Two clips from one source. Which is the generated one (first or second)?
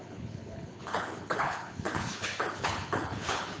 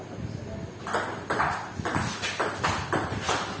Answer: first